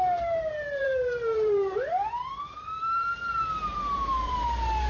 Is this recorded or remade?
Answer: remade